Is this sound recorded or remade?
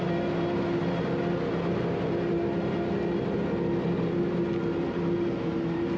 recorded